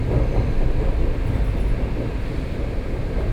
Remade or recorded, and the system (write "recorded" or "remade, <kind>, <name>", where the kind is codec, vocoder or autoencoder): recorded